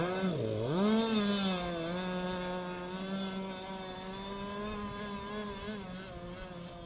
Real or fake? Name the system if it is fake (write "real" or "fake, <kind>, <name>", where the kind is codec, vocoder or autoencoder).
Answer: real